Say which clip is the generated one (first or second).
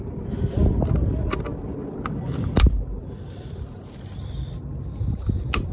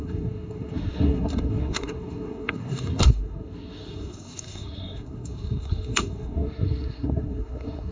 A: second